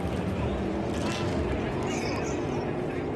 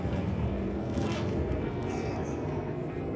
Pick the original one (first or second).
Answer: first